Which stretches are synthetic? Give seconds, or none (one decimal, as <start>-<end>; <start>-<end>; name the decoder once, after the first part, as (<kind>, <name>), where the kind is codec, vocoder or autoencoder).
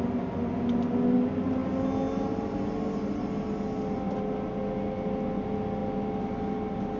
none